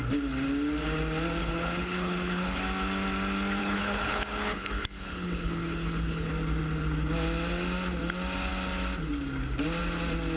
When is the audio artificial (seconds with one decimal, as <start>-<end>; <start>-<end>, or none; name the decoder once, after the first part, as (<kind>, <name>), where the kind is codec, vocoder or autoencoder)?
1.4-2.6 (codec, HILCodec); 3.6-6.3

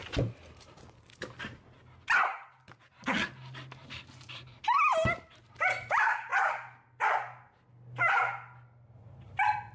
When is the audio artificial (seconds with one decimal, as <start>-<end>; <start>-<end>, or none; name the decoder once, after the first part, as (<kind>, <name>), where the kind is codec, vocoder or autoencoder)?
none

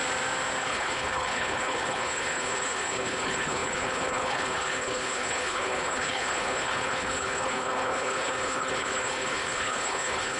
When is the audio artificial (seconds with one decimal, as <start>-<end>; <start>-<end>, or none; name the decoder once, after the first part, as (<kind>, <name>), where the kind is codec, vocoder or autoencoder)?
0.6-10.4 (codec, HILCodec)